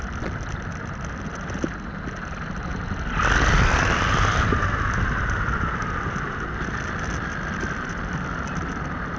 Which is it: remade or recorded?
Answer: recorded